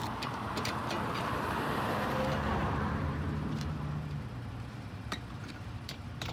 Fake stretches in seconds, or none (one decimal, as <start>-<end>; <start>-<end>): 0.0-0.8; 1.8-6.3